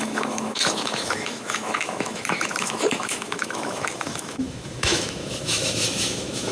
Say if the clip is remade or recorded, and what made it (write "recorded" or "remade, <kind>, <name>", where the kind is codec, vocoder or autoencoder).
remade, autoencoder, DAC-VAE